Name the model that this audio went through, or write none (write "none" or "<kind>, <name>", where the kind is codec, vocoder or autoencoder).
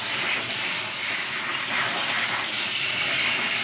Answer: none